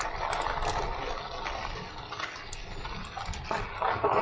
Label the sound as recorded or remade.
recorded